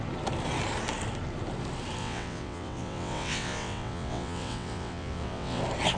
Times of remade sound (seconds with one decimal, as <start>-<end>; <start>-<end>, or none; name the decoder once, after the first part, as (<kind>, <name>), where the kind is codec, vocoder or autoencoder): 2.0-5.6 (vocoder, WaveNeXt)